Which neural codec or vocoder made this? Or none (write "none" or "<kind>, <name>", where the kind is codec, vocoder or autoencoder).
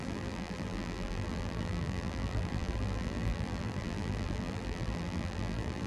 vocoder, BigVGAN v2